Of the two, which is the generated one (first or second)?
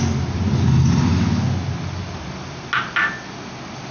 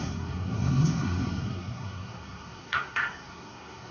second